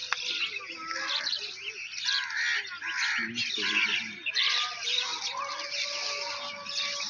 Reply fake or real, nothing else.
real